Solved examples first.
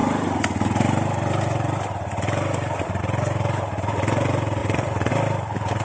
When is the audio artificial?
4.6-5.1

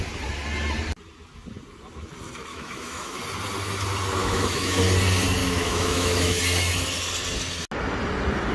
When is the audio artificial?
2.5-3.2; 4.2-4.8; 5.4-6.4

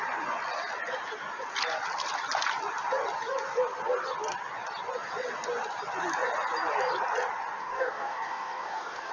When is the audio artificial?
7.6-9.1

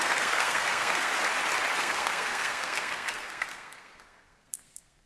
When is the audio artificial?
0.0-1.1; 1.8-5.1

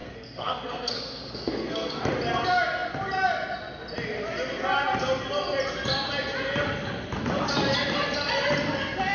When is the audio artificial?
0.0-2.0

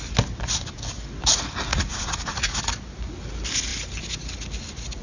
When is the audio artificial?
1.7-2.6

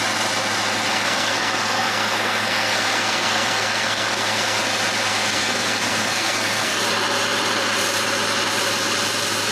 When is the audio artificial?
0.9-4.6; 5.1-6.8